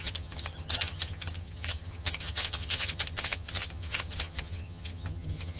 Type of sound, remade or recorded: remade